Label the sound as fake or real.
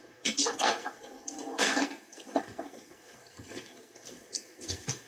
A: fake